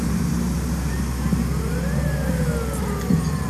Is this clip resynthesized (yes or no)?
no